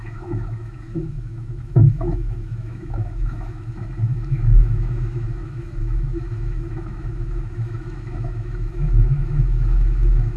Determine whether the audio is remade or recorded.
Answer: remade